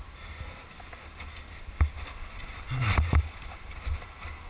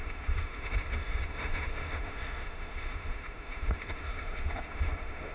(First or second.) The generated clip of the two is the second